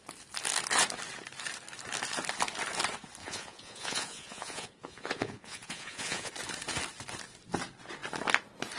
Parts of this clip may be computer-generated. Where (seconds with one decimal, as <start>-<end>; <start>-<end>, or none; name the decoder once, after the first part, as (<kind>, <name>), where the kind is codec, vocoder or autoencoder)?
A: 3.2-6.3 (vocoder, Vocos)

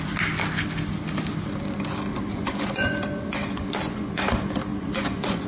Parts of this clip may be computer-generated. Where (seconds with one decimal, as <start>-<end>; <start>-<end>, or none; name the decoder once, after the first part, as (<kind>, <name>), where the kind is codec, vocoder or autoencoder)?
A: 2.1-4.2 (vocoder, Vocos); 4.7-5.5

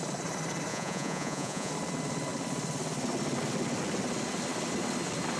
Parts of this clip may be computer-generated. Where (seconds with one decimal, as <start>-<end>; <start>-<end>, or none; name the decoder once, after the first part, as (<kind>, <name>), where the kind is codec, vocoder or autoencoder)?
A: 0.7-1.7 (vocoder, Vocos)

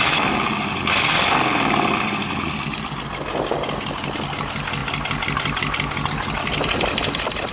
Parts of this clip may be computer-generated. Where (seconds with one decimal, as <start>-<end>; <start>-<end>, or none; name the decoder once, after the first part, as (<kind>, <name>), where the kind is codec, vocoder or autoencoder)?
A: none

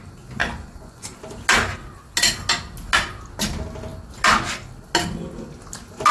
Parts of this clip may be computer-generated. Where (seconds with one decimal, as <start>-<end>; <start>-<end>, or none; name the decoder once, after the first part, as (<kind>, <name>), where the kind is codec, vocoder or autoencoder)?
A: 0.4-1.2 (vocoder, Vocos)